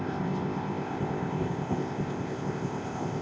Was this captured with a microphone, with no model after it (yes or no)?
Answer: no